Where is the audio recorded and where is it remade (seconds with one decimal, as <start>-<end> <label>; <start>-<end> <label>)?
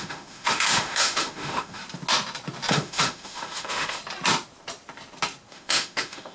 0.0-1.8 remade; 1.8-2.7 recorded; 2.7-4.0 remade; 4.0-5.5 recorded; 5.5-6.3 remade